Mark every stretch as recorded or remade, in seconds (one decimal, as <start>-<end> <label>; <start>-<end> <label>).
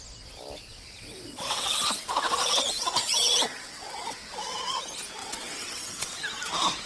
0.0-0.7 recorded; 0.7-4.8 remade; 4.8-5.2 recorded; 5.2-6.2 remade; 6.2-6.9 recorded